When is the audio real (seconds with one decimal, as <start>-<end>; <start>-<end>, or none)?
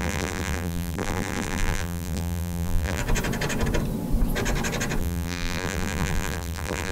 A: 3.0-5.0